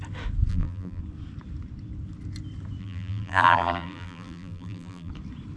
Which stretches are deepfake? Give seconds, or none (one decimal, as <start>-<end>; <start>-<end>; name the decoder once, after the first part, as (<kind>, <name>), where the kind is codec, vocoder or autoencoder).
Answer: 0.5-1.0 (vocoder, BigVGAN v2); 2.8-5.1